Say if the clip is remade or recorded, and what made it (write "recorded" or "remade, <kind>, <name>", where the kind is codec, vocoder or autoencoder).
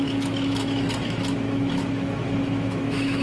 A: remade, autoencoder, DAC-VAE